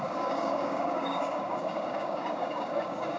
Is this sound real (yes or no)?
no